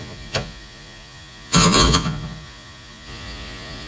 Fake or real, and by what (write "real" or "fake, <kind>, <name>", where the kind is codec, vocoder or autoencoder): fake, vocoder, Vocos